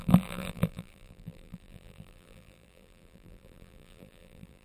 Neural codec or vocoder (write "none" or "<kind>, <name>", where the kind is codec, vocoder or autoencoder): vocoder, BigVGAN v2